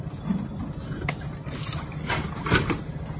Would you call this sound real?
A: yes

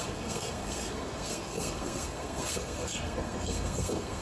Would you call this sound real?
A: no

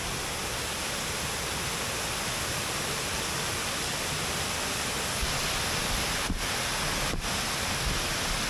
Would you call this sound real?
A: yes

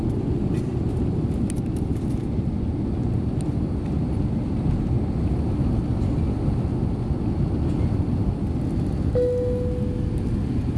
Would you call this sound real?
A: yes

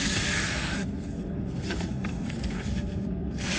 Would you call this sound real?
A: no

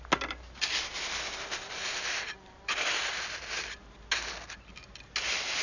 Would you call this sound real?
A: yes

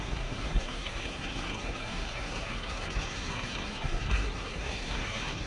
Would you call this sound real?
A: no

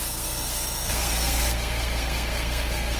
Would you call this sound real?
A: no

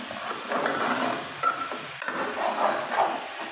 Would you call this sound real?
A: yes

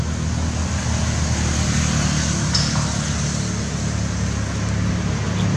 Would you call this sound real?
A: yes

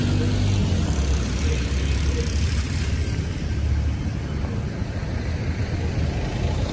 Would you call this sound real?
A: yes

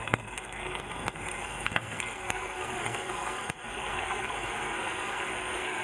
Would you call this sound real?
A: no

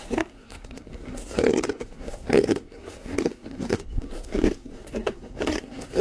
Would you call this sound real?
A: no